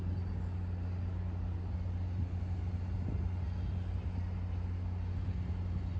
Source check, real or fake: real